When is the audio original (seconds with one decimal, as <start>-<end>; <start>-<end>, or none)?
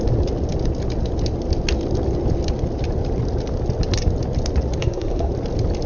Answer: 0.0-4.8; 5.3-5.9